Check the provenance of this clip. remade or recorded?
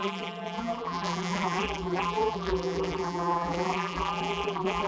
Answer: remade